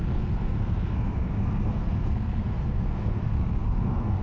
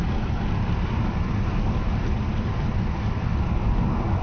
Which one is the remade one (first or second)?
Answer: first